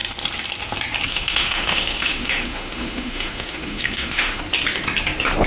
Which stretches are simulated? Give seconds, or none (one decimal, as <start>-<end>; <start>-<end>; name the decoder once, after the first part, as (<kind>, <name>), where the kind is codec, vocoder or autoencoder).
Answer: 1.1-4.4 (autoencoder, DAC-VAE)